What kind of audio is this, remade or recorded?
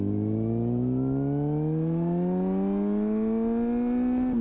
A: recorded